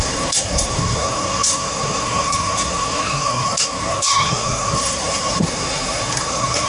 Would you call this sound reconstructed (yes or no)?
yes